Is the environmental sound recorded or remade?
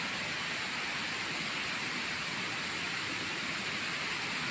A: recorded